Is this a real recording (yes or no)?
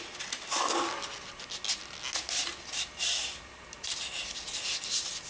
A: yes